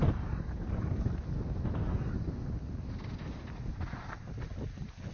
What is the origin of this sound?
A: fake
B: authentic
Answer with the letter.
B